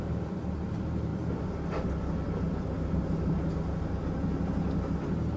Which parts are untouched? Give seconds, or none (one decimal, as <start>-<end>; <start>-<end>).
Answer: 0.0-5.4